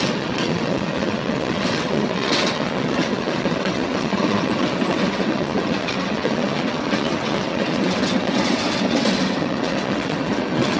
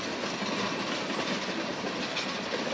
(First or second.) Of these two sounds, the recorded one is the second